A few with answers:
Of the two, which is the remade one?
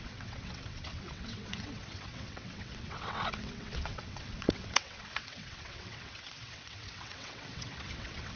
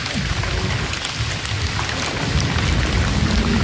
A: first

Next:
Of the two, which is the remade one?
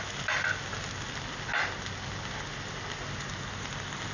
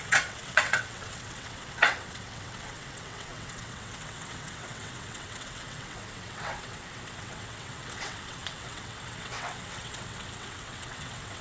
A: second